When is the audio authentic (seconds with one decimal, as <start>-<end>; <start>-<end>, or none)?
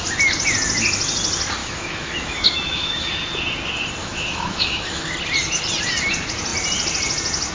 0.0-1.6; 3.1-4.0; 5.1-7.5